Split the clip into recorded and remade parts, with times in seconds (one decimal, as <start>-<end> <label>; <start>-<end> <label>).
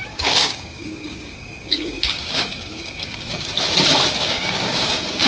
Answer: 0.0-3.5 remade; 3.5-4.2 recorded; 4.2-5.3 remade